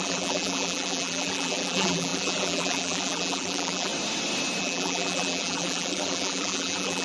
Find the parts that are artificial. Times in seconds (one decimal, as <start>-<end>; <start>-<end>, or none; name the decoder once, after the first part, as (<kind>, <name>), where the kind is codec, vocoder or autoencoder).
0.0-3.9 (vocoder, BigVGAN v2); 4.6-7.0